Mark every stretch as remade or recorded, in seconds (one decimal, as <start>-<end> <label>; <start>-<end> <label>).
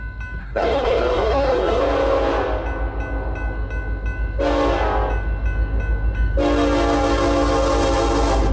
0.0-0.4 recorded; 0.4-1.8 remade; 1.8-8.5 recorded